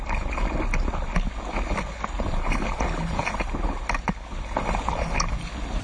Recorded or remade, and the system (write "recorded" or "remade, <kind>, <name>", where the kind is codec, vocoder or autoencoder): recorded